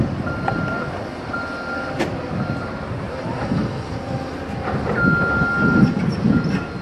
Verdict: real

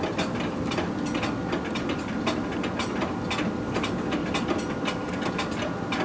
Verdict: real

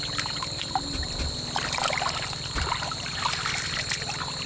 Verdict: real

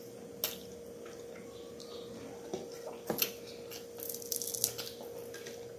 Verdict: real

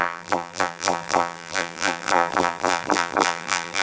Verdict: fake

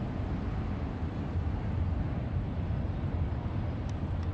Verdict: real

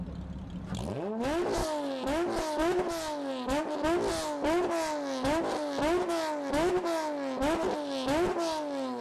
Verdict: real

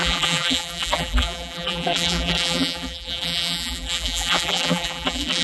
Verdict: fake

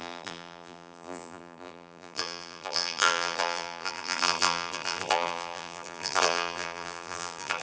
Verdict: fake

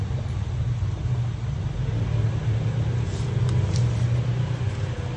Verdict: real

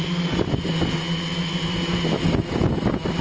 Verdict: real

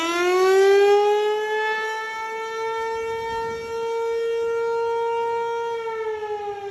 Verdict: real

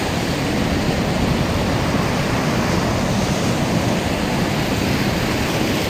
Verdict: fake